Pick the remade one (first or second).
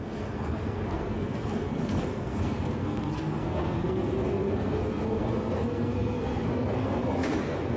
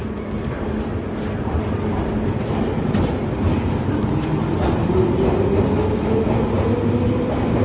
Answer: first